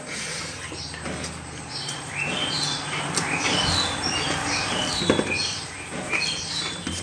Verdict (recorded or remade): recorded